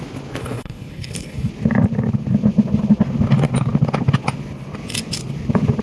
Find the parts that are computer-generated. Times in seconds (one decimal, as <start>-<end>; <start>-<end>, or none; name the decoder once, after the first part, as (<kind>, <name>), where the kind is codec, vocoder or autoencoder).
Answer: 0.4-1.5 (codec, HILCodec)

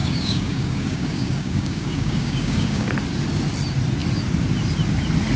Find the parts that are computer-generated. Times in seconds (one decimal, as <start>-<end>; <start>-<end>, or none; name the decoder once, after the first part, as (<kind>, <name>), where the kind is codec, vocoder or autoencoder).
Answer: 0.0-2.9 (codec, DAC)

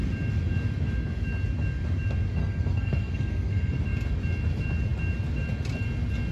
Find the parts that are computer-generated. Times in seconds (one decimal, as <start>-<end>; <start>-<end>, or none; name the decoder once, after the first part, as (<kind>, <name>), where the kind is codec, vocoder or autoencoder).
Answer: 2.4-3.8 (codec, SNAC)

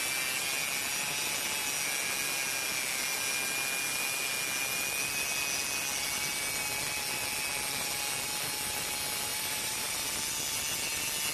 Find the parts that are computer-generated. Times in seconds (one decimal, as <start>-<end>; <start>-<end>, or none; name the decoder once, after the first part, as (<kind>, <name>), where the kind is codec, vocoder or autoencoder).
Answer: 9.3-9.9 (vocoder, BigVGAN v2)

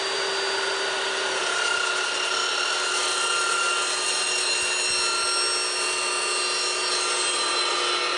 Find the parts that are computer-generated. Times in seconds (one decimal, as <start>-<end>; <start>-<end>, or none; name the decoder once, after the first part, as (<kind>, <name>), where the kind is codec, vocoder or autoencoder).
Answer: none